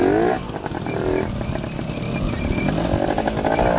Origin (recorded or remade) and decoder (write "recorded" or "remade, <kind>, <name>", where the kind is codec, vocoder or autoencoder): recorded